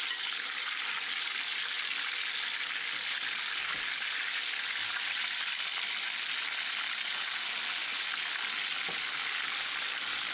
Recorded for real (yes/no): yes